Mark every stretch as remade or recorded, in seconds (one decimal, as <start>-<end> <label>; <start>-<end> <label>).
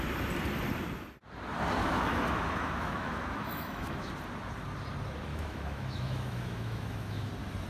0.0-1.8 recorded; 1.8-4.1 remade; 4.1-5.3 recorded; 5.3-7.3 remade; 7.3-7.7 recorded